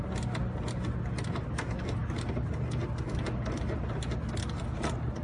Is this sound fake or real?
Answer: real